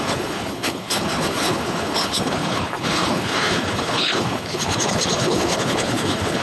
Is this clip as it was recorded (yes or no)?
no